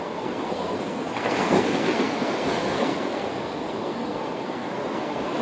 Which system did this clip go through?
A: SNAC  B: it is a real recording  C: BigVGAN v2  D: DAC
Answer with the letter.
A